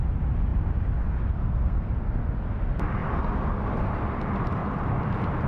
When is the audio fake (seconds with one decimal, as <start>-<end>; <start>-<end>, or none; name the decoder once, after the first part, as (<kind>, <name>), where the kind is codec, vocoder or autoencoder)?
1.4-1.9 (codec, SNAC)

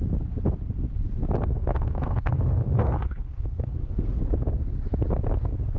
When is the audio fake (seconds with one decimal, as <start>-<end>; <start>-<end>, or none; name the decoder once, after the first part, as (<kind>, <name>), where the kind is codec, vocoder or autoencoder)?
1.6-2.3 (codec, SNAC); 2.8-4.2

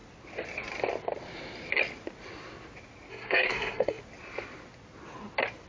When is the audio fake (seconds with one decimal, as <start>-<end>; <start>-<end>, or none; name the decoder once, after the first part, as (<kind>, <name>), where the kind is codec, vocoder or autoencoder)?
3.1-4.0 (codec, SNAC)

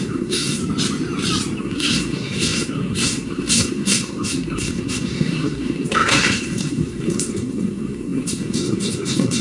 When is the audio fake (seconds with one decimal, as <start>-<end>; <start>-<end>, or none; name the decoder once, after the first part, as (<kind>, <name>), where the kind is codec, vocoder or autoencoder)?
0.0-0.6 (codec, SNAC); 1.6-9.4

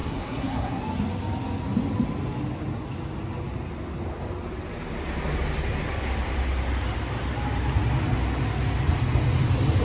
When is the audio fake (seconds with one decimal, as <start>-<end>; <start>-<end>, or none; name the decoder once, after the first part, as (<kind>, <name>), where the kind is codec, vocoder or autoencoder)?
0.0-0.8 (codec, SNAC)

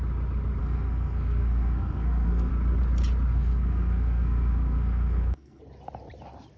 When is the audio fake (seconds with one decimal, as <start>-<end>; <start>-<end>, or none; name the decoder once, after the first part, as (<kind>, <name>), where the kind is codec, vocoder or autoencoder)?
0.6-2.5 (codec, SNAC); 3.3-5.6

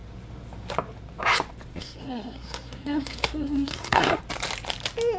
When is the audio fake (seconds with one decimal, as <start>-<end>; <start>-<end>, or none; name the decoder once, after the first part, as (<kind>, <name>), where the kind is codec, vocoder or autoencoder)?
1.7-4.2 (codec, SNAC)